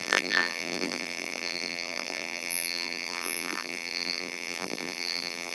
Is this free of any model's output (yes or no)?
no